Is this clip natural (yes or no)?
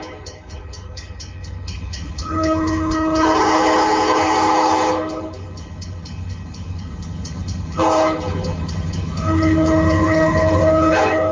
no